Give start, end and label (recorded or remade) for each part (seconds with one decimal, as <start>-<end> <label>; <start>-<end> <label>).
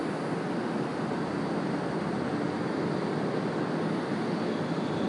0.0-5.1 recorded